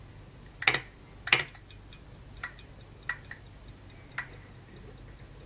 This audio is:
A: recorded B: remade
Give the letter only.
A